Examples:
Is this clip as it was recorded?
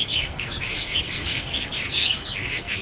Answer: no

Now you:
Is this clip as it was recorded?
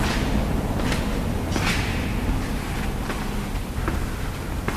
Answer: yes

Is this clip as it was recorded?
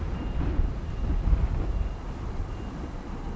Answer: yes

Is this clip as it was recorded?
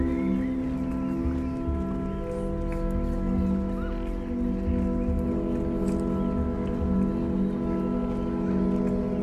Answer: yes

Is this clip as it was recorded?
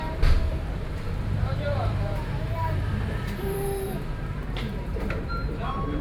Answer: no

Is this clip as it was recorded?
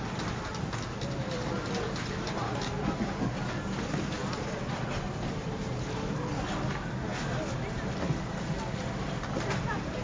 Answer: yes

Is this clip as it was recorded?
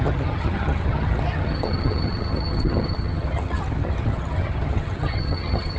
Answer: no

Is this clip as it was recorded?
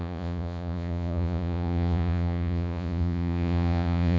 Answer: no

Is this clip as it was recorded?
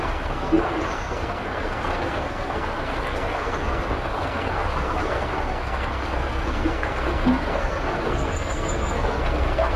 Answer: no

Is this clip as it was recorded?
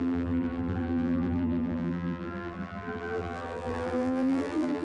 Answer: no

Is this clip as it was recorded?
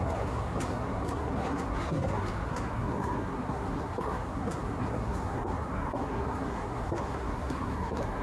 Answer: no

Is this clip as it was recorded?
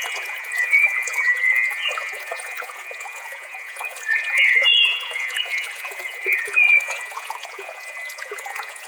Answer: no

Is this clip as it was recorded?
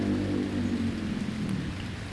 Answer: yes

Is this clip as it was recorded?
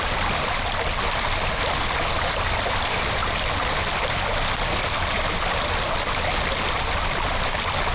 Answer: yes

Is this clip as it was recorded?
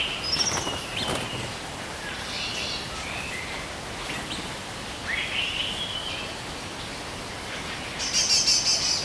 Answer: yes